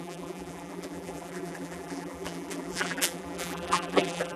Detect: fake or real fake